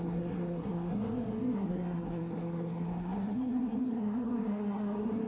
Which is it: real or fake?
fake